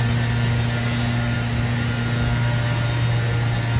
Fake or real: real